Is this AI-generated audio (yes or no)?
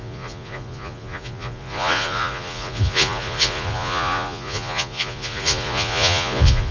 yes